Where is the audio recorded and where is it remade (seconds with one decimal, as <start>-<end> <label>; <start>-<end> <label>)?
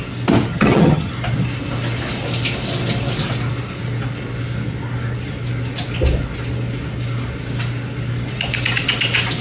0.0-0.5 recorded; 0.5-1.1 remade; 1.1-9.4 recorded